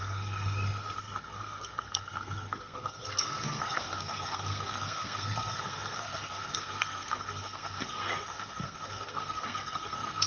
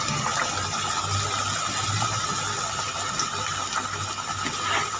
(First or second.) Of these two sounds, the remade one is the first